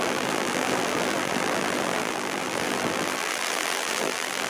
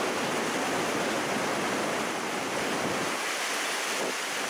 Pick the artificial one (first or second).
first